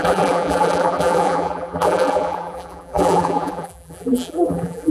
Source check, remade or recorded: remade